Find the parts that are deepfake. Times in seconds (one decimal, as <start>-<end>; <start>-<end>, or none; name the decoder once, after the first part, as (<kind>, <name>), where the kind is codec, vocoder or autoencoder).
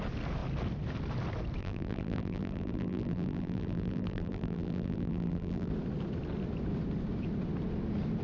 1.6-5.7 (vocoder, BigVGAN v2)